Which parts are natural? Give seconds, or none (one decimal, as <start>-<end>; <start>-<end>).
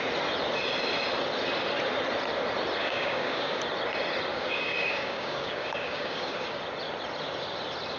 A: 0.0-2.8; 3.6-4.3; 6.6-8.0